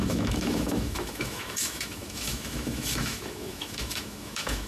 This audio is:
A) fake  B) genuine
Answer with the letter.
A